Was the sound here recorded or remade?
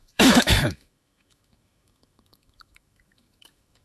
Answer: remade